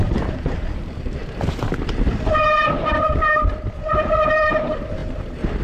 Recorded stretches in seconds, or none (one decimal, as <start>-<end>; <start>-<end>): 1.2-4.6